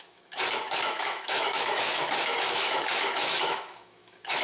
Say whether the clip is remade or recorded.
remade